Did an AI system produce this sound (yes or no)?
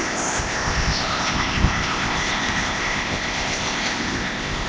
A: yes